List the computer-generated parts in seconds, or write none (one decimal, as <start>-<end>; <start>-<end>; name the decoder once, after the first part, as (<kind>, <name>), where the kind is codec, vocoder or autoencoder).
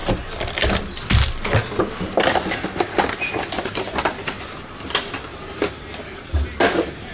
5.3-6.3 (vocoder, BigVGAN v2)